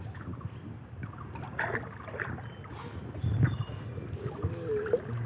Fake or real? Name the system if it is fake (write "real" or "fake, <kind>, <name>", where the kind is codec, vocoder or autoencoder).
real